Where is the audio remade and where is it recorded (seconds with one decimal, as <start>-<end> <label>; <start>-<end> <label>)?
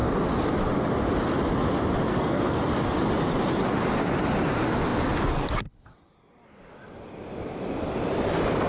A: 0.0-2.1 recorded; 2.1-2.6 remade; 2.6-8.7 recorded